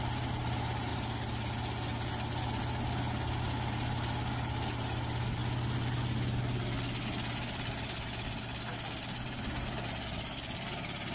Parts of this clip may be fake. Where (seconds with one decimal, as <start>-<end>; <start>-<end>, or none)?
none